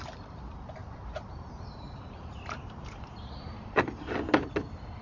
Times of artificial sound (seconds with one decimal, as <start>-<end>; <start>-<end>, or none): 0.8-3.8